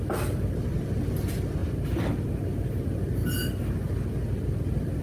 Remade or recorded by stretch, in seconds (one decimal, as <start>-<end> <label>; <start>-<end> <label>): 0.0-1.6 remade; 1.6-2.1 recorded; 2.1-3.2 remade; 3.2-4.5 recorded; 4.5-5.0 remade